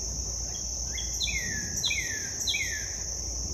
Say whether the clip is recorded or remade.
recorded